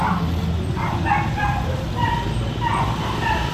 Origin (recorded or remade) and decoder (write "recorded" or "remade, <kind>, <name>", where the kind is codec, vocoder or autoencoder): recorded